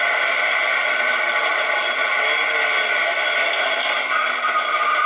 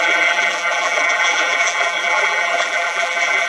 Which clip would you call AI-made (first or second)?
second